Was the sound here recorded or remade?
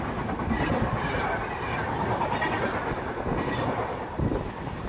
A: recorded